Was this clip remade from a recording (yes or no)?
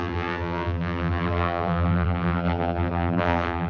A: yes